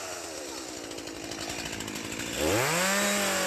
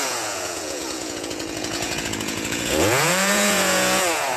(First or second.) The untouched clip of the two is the first